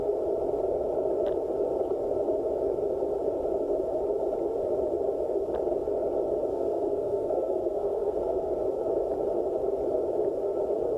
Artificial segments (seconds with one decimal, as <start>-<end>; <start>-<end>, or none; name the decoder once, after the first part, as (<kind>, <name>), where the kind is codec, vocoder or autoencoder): 6.5-8.5 (codec, SNAC)